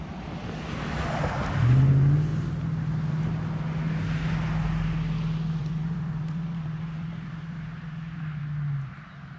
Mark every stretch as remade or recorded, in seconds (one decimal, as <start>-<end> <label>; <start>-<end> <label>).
0.0-5.6 recorded; 5.6-8.4 remade; 8.4-9.4 recorded